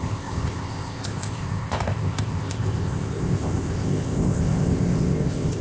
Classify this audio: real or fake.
fake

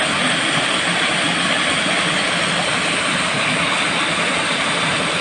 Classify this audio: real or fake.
real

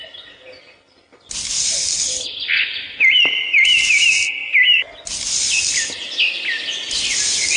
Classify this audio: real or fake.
real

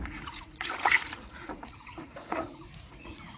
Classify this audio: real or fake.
fake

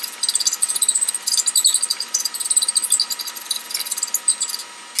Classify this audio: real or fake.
real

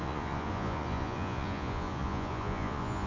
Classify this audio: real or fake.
fake